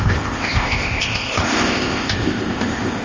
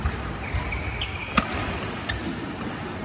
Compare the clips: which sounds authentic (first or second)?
second